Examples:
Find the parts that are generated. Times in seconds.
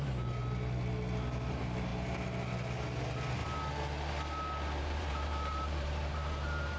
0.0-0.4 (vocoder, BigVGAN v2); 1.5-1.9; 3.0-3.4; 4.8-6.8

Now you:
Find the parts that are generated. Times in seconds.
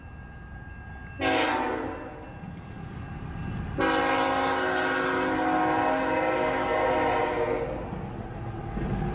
none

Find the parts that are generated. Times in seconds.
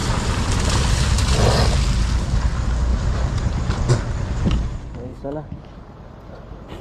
2.9-3.9 (vocoder, BigVGAN v2); 5.1-6.2